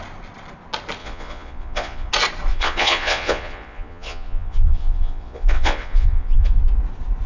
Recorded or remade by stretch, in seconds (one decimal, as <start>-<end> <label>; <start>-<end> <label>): 0.0-1.0 recorded; 1.0-2.1 remade; 2.1-2.5 recorded; 2.5-6.6 remade; 6.6-7.3 recorded